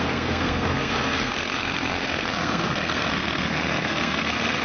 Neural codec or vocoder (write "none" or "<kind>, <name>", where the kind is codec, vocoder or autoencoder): codec, SNAC